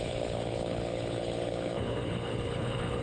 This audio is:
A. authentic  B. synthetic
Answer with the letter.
B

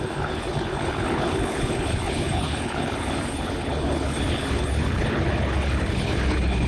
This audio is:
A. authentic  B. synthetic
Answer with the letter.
B